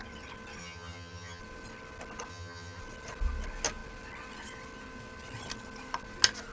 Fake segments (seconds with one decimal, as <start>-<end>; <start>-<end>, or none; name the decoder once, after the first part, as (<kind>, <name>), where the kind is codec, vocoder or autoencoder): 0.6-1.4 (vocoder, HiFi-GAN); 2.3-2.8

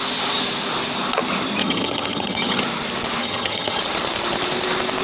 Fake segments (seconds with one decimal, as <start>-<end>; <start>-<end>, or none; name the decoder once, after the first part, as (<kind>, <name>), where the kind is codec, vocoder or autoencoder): 1.6-2.6 (vocoder, HiFi-GAN); 3.2-3.8

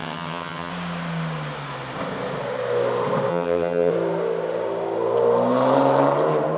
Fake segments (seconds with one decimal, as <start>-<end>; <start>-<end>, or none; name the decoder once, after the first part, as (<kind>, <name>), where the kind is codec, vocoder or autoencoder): 0.0-0.7 (vocoder, HiFi-GAN); 3.3-3.9